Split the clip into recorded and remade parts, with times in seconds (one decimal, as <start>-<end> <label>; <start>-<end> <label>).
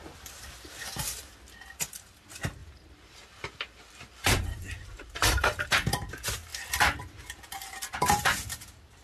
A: 0.0-2.6 recorded; 2.6-6.1 remade; 6.1-9.0 recorded